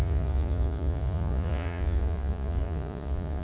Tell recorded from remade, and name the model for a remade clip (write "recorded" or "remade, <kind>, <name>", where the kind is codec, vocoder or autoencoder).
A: remade, vocoder, Vocos